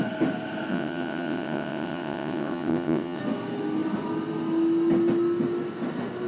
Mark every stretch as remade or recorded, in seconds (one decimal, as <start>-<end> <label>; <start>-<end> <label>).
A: 0.0-0.7 recorded; 0.7-3.2 remade; 3.2-6.3 recorded